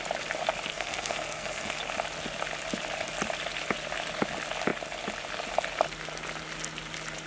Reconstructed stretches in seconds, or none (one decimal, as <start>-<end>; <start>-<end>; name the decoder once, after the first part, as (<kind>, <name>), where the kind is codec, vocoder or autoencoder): 0.7-1.8 (codec, SNAC)